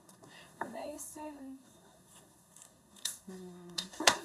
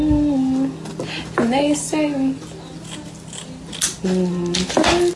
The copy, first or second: first